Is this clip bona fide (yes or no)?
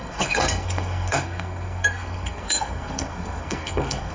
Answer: no